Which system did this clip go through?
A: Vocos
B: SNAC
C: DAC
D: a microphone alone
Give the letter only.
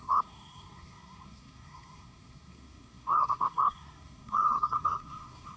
B